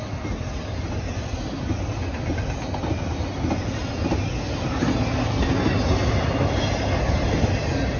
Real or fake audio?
real